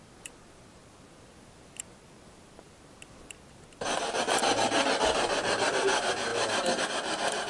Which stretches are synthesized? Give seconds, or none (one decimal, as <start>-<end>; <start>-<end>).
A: 6.3-6.8